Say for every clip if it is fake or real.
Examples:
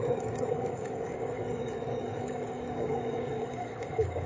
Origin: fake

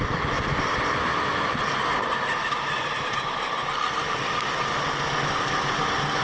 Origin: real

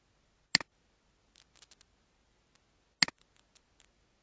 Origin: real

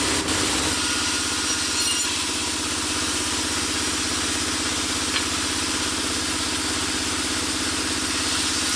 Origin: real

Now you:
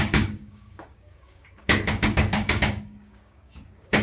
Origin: fake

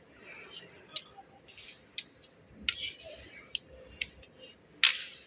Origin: real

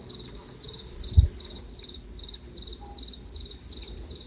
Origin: real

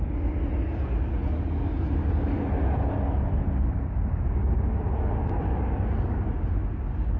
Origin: real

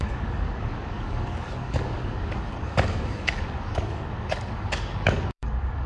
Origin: fake